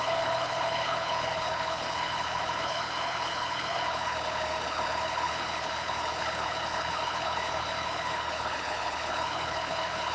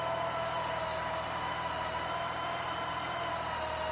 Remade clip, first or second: first